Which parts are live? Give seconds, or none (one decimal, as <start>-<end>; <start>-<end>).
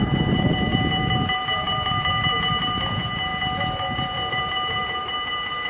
3.3-4.3